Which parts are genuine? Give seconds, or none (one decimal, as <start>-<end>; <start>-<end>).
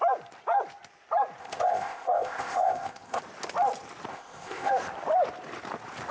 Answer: 0.0-1.4; 3.2-4.1; 4.7-6.1